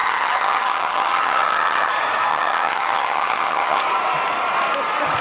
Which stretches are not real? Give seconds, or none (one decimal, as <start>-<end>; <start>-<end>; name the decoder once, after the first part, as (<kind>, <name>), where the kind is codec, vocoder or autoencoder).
0.0-1.9 (vocoder, HiFi-GAN); 2.3-3.8